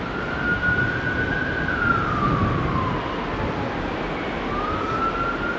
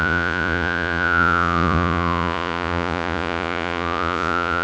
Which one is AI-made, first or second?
second